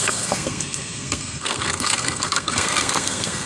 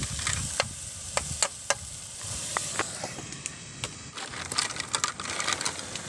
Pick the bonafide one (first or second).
second